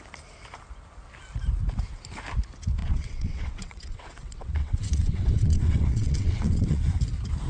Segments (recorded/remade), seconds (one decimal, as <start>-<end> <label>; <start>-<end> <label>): 0.0-2.8 recorded; 2.8-6.8 remade; 6.8-7.5 recorded